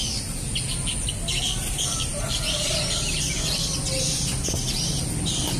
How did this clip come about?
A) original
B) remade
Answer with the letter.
A